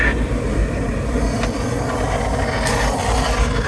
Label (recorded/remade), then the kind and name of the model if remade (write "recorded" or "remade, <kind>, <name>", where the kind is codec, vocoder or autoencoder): recorded